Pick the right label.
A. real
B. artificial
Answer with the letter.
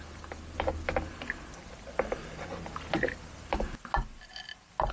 A